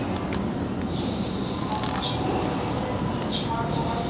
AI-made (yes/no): no